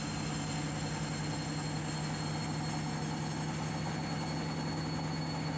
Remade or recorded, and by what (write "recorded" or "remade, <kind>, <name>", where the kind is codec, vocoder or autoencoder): recorded